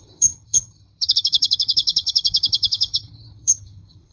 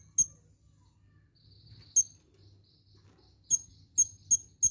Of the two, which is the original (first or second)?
second